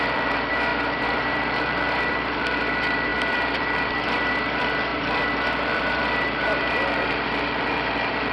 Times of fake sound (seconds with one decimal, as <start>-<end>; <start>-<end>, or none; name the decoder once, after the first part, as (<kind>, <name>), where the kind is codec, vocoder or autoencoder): 0.0-8.3 (vocoder, BigVGAN v2)